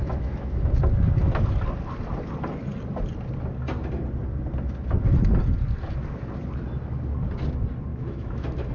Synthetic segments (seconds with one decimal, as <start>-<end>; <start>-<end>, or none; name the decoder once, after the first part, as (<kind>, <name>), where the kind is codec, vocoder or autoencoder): 0.0-0.8 (autoencoder, DAC-VAE); 7.9-8.7